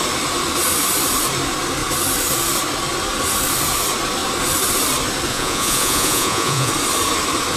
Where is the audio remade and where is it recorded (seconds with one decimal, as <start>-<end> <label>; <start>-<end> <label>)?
0.0-5.3 recorded; 5.3-6.7 remade; 6.7-7.6 recorded